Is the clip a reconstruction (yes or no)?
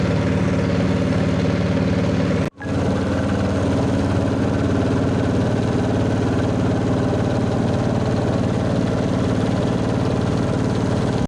no